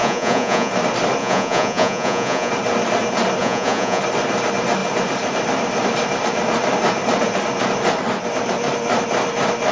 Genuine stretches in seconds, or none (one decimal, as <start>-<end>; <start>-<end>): 0.7-1.2; 2.5-3.4; 4.0-9.7